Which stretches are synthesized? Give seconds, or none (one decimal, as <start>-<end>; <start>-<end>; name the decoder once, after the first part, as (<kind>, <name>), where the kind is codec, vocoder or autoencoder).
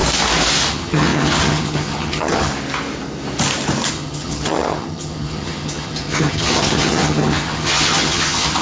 0.7-2.5 (vocoder, HiFi-GAN); 3.9-8.6